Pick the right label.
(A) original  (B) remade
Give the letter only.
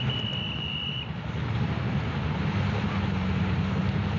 A